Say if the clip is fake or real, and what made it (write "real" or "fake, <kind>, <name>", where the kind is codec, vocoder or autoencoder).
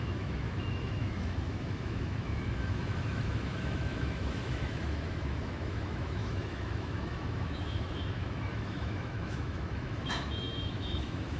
fake, autoencoder, DAC-VAE